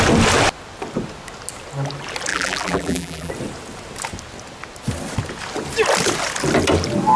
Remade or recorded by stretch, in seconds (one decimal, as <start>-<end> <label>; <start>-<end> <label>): 0.0-2.3 recorded; 2.3-3.3 remade; 3.3-7.2 recorded